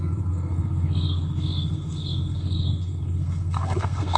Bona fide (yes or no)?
no